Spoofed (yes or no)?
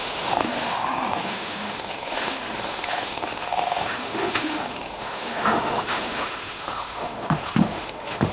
yes